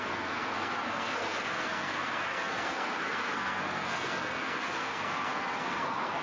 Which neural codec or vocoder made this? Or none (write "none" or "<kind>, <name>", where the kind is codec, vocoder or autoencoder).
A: codec, SNAC